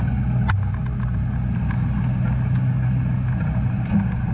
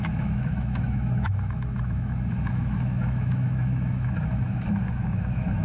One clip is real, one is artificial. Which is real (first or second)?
first